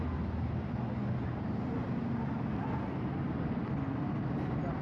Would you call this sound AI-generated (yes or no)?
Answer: no